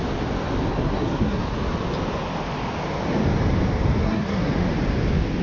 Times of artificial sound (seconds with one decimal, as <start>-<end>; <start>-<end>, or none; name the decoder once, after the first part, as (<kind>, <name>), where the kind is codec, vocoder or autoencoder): 0.7-1.4 (codec, SNAC); 4.0-4.5